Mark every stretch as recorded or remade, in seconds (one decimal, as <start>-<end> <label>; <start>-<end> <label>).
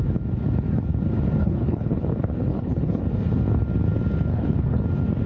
0.0-1.4 recorded; 1.4-2.1 remade; 2.1-2.5 recorded; 2.5-3.0 remade; 3.0-4.3 recorded; 4.3-4.8 remade; 4.8-5.3 recorded